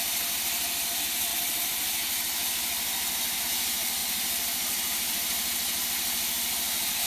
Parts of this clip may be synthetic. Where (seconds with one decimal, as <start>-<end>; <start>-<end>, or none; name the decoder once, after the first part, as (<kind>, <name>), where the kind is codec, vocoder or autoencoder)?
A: none